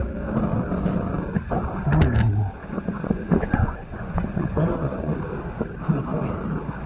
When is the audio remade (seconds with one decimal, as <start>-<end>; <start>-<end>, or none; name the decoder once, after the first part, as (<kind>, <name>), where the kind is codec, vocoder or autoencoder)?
2.6-5.2 (vocoder, Vocos)